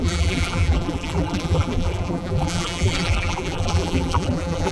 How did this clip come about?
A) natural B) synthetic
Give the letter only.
B